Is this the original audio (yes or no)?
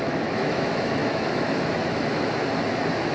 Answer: no